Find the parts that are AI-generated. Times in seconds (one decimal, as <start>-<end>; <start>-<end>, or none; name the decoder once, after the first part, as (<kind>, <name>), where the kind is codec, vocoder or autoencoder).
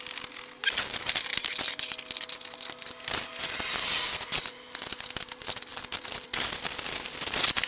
none